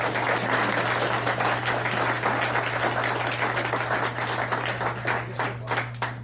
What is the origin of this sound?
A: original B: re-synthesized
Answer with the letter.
A